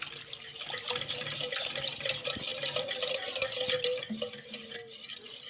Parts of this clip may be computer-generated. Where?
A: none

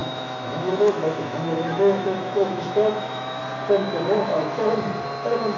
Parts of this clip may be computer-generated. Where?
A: 0.0-3.4 (autoencoder, DAC-VAE); 3.8-4.7

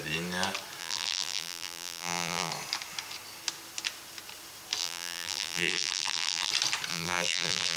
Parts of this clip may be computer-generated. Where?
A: 0.8-2.5 (vocoder, BigVGAN v2); 4.8-6.5; 6.9-7.8

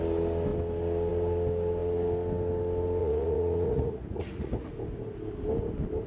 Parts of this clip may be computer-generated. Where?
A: 3.0-4.7 (vocoder, Vocos)

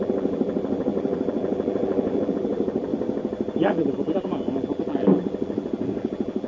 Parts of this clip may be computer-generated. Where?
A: 0.0-2.9 (vocoder, BigVGAN v2); 3.6-6.5